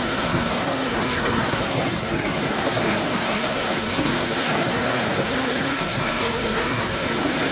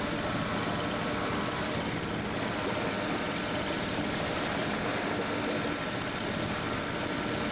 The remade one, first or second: first